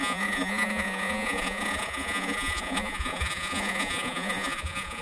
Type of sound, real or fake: fake